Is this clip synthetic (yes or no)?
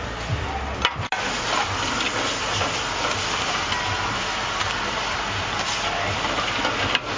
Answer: no